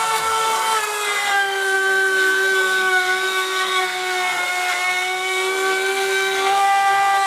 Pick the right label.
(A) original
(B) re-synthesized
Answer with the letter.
B